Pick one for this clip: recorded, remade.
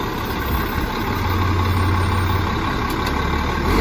recorded